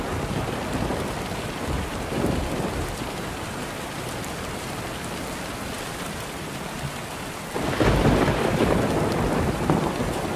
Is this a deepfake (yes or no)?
yes